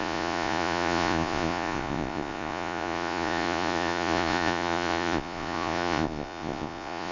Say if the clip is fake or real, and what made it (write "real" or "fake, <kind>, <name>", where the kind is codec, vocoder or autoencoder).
fake, vocoder, Vocos